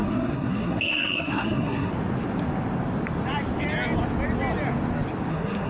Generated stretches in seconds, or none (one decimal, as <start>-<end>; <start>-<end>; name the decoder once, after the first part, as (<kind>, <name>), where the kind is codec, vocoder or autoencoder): 0.0-1.9 (codec, SNAC); 5.3-5.7